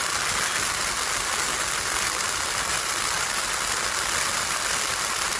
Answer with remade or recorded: recorded